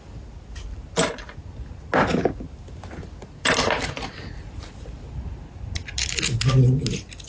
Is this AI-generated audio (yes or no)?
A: no